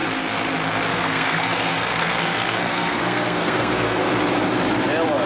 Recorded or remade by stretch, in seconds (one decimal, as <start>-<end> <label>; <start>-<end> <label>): 0.0-0.9 recorded; 0.9-4.1 remade; 4.1-5.3 recorded